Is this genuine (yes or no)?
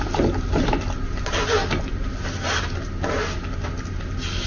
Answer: yes